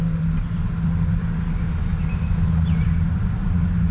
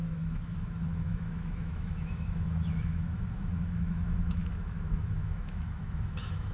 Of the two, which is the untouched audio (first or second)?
first